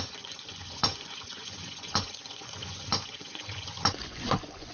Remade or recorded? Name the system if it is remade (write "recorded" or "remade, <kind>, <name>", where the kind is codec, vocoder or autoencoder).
remade, vocoder, Vocos